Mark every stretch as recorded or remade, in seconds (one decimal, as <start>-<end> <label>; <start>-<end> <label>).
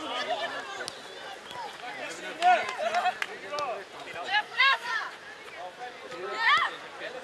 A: 0.0-4.3 recorded; 4.3-4.9 remade; 4.9-7.2 recorded